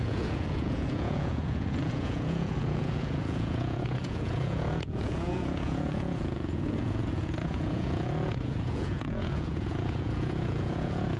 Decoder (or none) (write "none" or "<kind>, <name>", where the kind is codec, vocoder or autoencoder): vocoder, Vocos